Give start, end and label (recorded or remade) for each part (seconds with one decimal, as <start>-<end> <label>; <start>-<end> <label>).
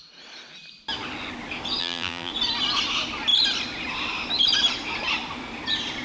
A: 0.0-1.8 recorded; 1.8-2.3 remade; 2.3-6.0 recorded